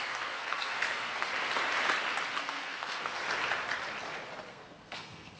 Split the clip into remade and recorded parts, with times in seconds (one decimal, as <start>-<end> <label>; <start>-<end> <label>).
0.0-1.3 remade; 1.3-2.4 recorded; 2.4-3.2 remade; 3.2-4.5 recorded; 4.5-5.4 remade